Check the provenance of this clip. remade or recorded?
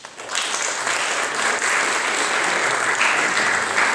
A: recorded